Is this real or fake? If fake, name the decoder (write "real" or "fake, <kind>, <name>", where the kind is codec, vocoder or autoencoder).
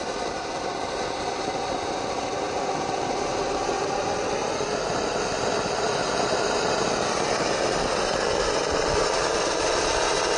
real